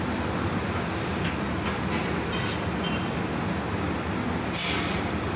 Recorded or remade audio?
recorded